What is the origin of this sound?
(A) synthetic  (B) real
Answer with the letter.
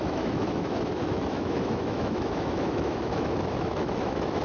A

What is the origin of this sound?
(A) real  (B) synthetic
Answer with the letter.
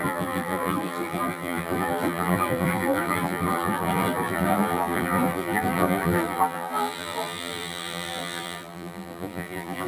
B